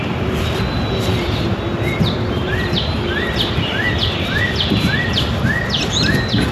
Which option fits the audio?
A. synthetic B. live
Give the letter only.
A